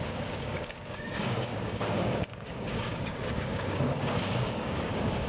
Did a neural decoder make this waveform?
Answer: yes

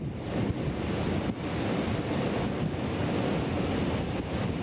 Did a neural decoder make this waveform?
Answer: no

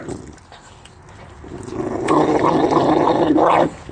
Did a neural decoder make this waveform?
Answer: no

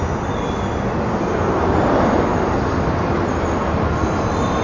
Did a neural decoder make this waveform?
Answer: no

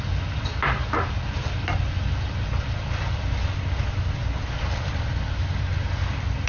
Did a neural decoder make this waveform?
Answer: no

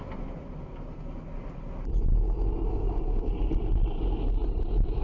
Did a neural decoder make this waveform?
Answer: no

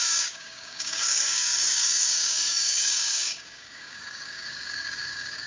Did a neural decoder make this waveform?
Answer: yes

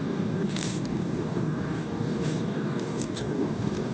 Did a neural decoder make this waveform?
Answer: yes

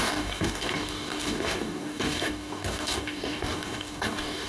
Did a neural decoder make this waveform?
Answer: yes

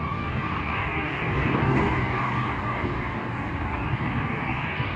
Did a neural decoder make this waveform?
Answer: yes